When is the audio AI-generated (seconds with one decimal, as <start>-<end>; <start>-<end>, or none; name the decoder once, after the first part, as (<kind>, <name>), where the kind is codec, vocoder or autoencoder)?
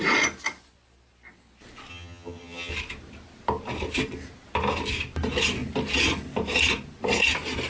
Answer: 1.9-2.7 (vocoder, HiFi-GAN)